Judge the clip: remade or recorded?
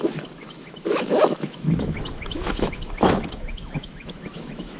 remade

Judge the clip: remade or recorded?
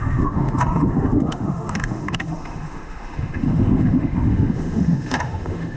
remade